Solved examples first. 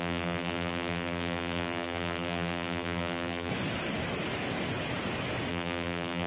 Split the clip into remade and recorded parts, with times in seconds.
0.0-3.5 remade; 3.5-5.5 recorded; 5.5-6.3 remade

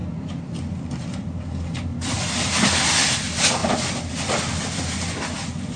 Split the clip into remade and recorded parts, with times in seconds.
0.0-5.8 recorded

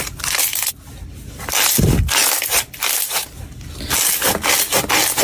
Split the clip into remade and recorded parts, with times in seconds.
0.0-5.2 recorded

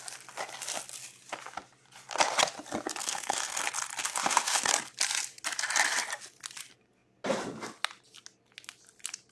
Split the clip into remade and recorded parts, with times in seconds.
0.0-3.0 recorded; 3.0-3.6 remade; 3.6-4.0 recorded; 4.0-4.7 remade; 4.7-9.3 recorded

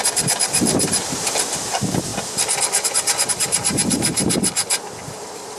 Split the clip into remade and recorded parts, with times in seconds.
0.0-2.1 remade; 2.1-3.3 recorded; 3.3-5.6 remade

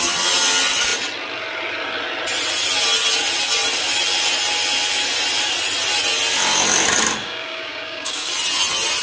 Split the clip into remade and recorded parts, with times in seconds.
0.0-7.2 recorded; 7.2-8.3 remade; 8.3-9.0 recorded